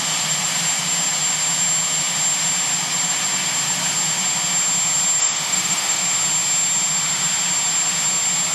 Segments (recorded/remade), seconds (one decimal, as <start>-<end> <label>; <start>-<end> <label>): 0.0-5.2 recorded; 5.2-6.0 remade; 6.0-8.5 recorded